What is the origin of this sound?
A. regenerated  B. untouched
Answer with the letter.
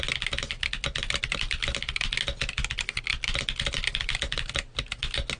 B